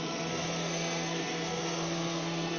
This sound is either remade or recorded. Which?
remade